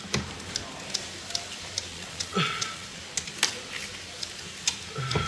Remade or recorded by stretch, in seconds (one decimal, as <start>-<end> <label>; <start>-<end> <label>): 0.0-1.9 recorded; 1.9-3.0 remade; 3.0-5.3 recorded